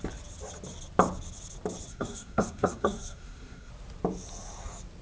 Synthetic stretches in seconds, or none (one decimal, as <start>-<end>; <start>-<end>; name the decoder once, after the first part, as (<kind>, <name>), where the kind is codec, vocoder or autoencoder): 1.9-3.7 (codec, SNAC)

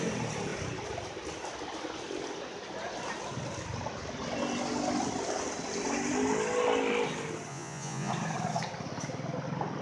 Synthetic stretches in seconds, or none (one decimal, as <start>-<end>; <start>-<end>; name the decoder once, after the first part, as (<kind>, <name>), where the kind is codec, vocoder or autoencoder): 7.5-8.1 (vocoder, Vocos)

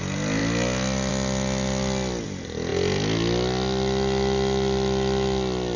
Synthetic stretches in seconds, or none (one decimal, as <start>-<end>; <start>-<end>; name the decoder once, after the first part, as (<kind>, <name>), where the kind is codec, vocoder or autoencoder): none

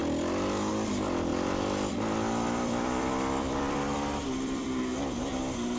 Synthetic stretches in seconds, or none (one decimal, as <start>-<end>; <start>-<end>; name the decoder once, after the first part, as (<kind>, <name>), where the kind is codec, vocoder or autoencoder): 1.3-4.8 (vocoder, BigVGAN v2)

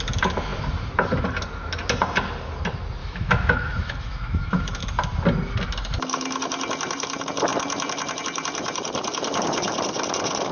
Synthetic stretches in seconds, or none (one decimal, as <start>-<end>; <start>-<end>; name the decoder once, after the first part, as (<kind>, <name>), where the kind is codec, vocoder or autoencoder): 3.0-4.8 (autoencoder, DAC-VAE)

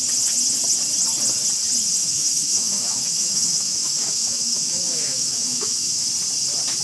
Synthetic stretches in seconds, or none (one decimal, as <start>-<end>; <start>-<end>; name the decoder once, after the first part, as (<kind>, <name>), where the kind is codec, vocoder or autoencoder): 2.0-6.1 (autoencoder, DAC-VAE)